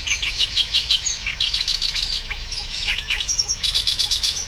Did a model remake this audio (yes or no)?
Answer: yes